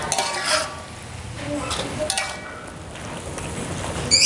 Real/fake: real